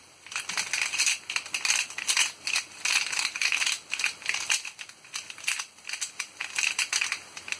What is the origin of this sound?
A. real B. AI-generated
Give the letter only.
A